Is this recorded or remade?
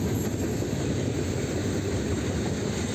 recorded